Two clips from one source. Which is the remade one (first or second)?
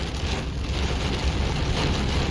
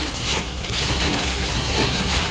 second